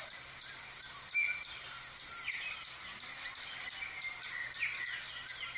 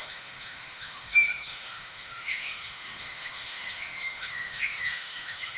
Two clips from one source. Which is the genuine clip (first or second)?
first